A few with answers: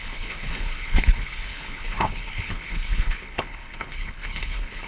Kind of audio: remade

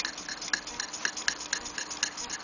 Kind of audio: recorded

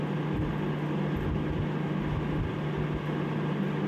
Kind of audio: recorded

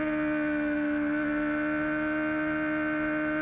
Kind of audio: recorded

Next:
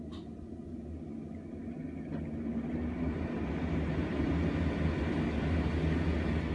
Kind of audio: recorded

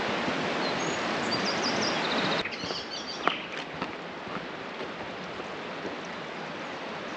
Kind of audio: recorded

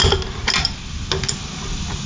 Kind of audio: recorded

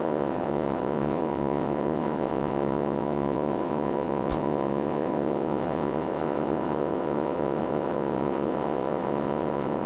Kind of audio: remade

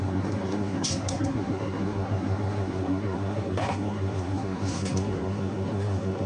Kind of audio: remade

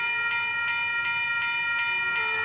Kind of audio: recorded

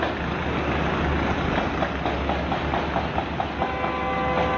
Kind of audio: recorded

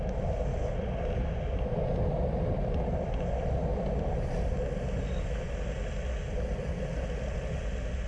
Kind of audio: recorded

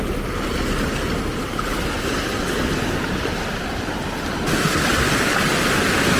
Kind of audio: recorded